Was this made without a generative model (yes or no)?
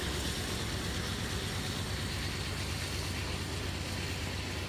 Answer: yes